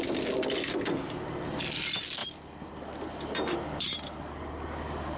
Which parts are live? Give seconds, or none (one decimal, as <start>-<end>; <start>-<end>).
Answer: 0.0-2.2; 4.5-5.2